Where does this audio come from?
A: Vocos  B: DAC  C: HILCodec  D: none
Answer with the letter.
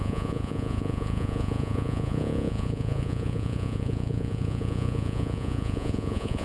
A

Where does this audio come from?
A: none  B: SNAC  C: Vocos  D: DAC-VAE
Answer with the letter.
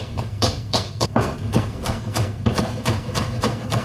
B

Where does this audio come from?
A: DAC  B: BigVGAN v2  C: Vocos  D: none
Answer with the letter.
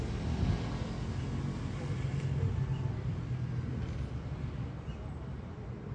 D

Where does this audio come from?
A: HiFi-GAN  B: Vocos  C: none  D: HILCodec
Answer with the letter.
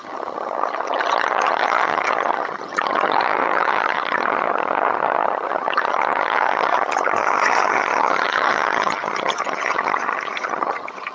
A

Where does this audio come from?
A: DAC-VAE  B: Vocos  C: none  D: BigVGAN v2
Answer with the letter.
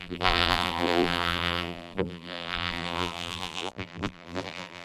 D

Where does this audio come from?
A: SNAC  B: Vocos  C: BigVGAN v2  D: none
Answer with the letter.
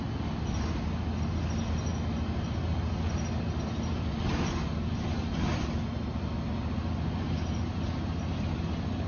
D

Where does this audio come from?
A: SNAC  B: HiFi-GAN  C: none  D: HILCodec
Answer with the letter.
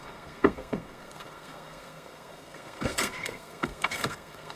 A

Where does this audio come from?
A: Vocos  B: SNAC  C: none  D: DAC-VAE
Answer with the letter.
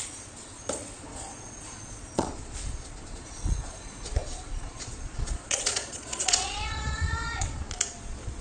A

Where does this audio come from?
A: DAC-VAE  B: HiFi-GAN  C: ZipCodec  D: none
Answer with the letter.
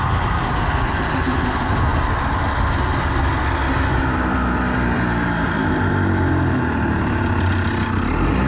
D